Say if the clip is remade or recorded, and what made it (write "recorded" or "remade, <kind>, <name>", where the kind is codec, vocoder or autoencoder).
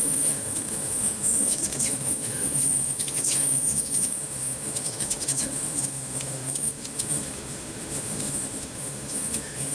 remade, autoencoder, DAC-VAE